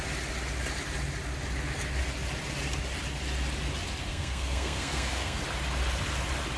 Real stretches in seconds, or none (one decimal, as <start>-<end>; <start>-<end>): 0.0-4.1; 5.4-6.6